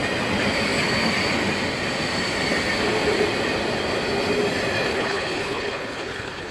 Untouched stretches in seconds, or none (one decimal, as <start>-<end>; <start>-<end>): 0.0-4.9